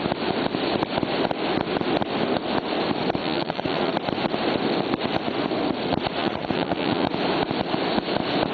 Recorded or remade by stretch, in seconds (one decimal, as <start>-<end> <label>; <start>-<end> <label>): 0.0-3.2 recorded; 3.2-3.9 remade; 3.9-6.2 recorded; 6.2-7.1 remade; 7.1-8.5 recorded